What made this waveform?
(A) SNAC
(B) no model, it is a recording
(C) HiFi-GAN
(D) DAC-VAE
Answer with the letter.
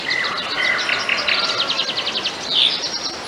B